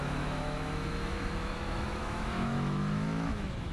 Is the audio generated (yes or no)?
yes